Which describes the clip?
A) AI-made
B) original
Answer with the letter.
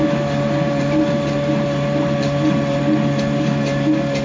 B